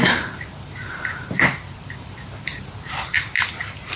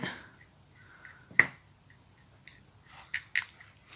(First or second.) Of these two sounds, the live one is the second